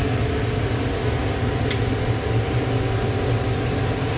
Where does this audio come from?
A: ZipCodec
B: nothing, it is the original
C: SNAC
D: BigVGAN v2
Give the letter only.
B